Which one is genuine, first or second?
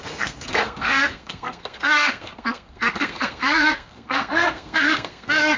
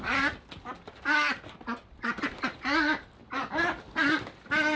second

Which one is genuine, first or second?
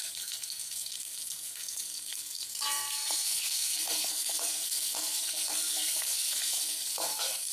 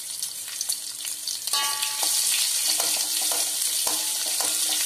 second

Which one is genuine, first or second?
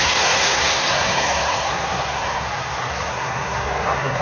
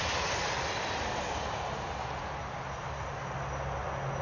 second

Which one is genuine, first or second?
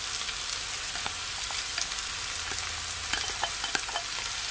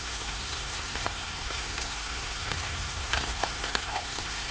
first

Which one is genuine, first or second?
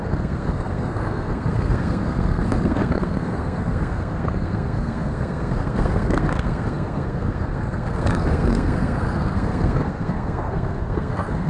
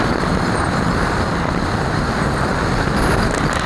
second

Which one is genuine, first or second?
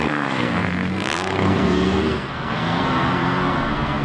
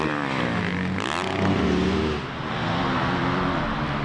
second